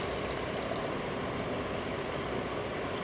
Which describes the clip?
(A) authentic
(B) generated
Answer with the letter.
A